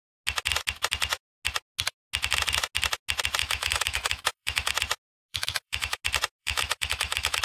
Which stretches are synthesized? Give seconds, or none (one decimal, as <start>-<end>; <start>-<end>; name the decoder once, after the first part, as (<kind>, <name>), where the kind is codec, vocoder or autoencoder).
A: 3.4-4.7 (autoencoder, DAC-VAE); 5.3-6.0; 6.4-7.4